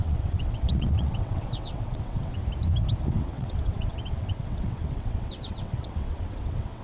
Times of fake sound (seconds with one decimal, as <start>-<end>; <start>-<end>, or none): 0.0-2.4; 3.0-6.8